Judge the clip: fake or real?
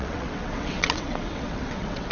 fake